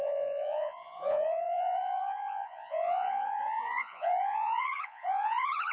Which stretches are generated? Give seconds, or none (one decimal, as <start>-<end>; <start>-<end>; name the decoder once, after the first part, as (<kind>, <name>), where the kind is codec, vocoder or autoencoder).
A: 0.0-5.7 (vocoder, Vocos)